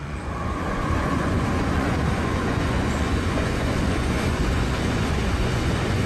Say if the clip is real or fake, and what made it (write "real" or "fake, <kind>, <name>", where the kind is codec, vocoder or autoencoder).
fake, vocoder, Vocos